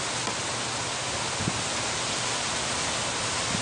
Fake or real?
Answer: real